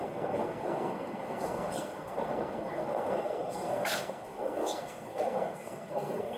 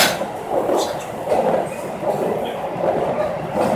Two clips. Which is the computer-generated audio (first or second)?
first